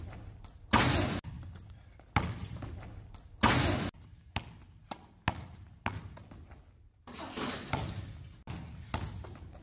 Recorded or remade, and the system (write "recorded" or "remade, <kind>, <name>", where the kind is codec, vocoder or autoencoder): recorded